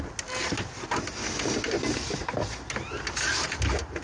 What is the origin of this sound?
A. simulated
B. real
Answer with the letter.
B